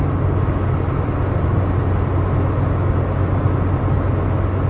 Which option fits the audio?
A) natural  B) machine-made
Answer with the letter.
A